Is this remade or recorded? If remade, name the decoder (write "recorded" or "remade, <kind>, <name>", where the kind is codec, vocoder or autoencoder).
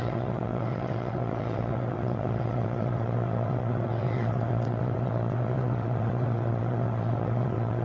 remade, vocoder, WaveNeXt